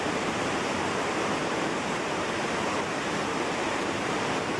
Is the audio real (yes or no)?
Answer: no